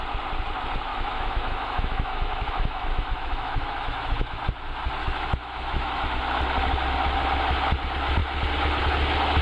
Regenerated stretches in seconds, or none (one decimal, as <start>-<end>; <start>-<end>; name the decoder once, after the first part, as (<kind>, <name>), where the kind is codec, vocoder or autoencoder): 0.9-4.4 (autoencoder, DAC-VAE); 5.0-6.0

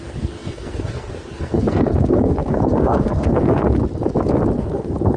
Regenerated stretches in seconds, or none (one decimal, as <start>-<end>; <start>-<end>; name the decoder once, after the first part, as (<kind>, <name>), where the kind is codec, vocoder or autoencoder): 0.0-3.8 (codec, SNAC); 4.6-5.2

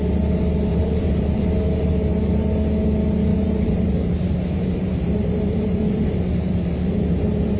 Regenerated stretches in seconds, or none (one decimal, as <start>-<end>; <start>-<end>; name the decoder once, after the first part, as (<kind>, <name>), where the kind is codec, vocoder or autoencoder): 0.7-1.5 (vocoder, BigVGAN v2); 3.3-6.9

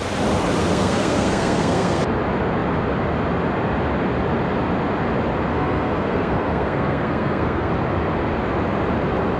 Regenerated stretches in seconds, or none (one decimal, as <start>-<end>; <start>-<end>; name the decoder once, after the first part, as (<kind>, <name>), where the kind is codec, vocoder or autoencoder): 0.6-2.0 (codec, SNAC); 5.5-7.7

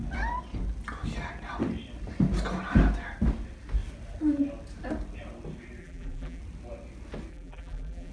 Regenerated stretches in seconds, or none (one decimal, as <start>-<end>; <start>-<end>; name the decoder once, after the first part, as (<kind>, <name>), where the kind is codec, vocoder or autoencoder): 5.8-6.4 (vocoder, BigVGAN v2); 7.3-8.1

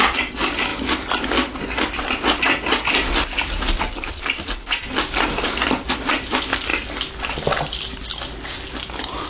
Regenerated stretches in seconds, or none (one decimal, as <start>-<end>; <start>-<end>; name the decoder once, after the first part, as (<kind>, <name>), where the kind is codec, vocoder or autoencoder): none